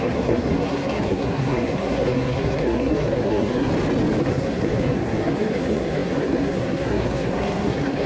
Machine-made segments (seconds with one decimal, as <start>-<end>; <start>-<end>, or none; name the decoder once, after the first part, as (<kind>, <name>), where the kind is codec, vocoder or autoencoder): 0.0-3.7 (codec, SNAC); 4.2-8.1